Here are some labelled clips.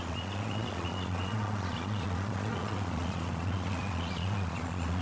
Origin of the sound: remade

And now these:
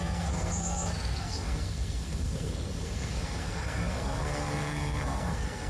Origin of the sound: remade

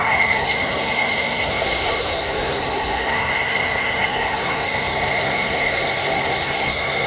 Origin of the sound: remade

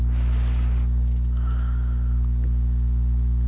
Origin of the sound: recorded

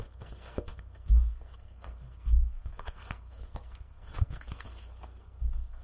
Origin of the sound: remade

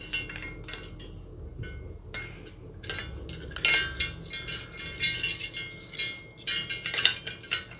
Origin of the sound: recorded